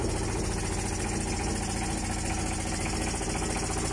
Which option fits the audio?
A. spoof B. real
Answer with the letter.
B